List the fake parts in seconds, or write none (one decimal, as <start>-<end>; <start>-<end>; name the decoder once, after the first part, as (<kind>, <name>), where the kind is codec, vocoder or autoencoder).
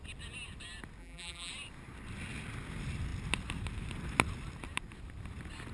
1.0-1.5 (vocoder, BigVGAN v2)